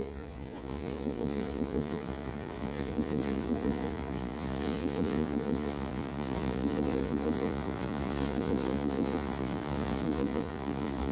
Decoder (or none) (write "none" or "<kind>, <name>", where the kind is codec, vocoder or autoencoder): vocoder, Vocos